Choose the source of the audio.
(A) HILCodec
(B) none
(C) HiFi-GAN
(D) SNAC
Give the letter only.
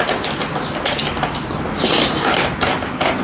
B